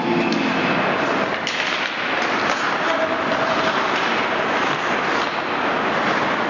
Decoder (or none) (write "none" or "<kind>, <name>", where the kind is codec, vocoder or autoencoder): none